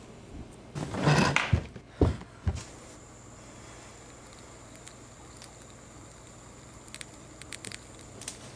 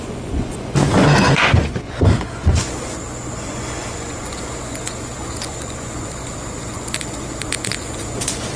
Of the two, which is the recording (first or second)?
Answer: first